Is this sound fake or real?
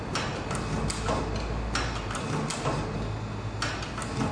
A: real